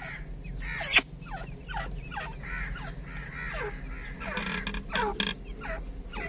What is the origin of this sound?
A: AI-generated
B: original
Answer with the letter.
B